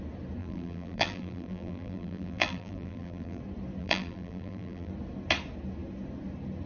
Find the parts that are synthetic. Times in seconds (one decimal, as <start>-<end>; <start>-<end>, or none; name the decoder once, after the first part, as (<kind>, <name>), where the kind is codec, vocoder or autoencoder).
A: 0.4-3.4 (vocoder, BigVGAN v2); 3.8-4.9